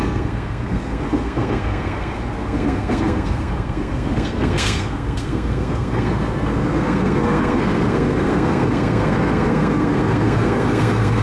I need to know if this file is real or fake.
fake